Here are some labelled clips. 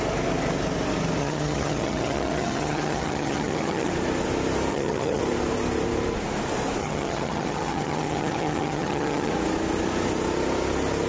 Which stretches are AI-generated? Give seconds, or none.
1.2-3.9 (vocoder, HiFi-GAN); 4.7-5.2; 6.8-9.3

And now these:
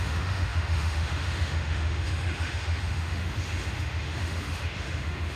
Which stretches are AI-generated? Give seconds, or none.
0.0-5.4 (autoencoder, DAC-VAE)

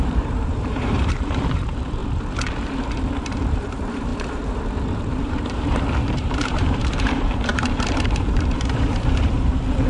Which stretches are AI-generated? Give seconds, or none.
0.0-2.0 (vocoder, BigVGAN v2); 2.7-9.9

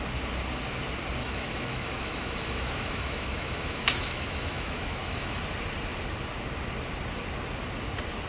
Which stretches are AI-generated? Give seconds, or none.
1.2-5.4 (autoencoder, DAC-VAE)

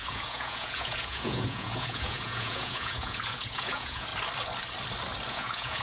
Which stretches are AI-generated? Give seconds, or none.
0.0-4.1 (vocoder, Vocos); 5.3-5.8

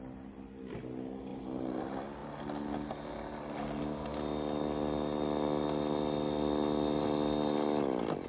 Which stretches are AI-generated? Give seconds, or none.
1.3-1.8 (vocoder, BigVGAN v2)